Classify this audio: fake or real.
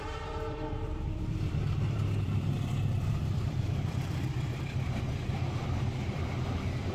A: fake